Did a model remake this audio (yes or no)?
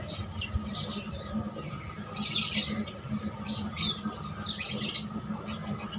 no